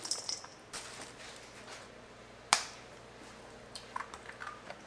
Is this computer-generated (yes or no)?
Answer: no